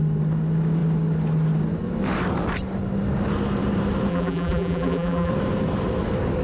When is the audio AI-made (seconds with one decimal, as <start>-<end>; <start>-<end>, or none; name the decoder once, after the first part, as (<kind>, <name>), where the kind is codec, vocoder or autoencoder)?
4.1-5.3 (vocoder, BigVGAN v2)